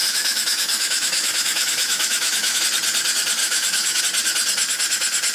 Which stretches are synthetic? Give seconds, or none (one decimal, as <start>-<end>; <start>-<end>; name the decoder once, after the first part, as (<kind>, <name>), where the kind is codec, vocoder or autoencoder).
0.0-2.6 (autoencoder, DAC-VAE); 3.4-4.0